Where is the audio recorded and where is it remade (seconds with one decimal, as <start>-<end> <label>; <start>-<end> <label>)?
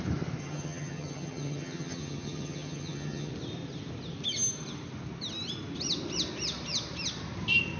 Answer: 0.0-0.4 recorded; 0.4-3.3 remade; 3.3-7.8 recorded